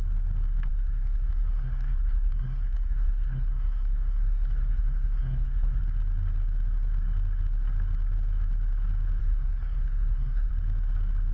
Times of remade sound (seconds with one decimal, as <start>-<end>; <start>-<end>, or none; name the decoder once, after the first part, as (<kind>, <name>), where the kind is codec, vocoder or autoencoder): 0.7-5.8 (codec, SNAC); 9.2-10.5